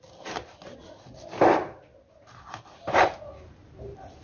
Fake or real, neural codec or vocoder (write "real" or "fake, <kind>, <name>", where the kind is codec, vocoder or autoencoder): real